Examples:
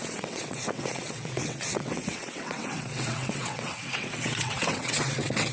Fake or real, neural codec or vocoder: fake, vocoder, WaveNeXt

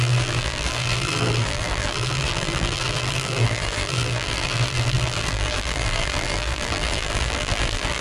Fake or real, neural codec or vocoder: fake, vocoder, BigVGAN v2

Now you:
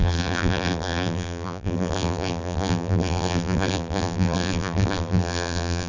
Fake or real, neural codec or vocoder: fake, vocoder, BigVGAN v2